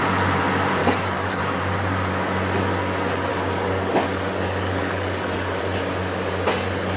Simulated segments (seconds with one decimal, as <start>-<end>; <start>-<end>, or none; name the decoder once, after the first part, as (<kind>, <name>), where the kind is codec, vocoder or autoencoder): 0.8-1.4 (codec, DAC); 3.3-5.6